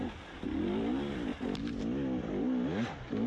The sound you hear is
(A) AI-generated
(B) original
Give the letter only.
B